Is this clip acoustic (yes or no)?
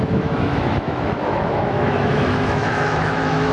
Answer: no